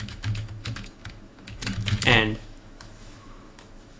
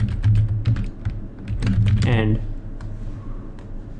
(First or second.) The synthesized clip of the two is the first